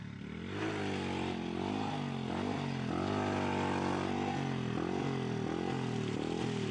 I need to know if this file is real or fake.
real